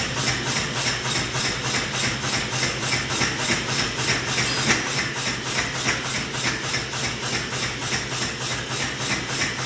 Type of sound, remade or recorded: recorded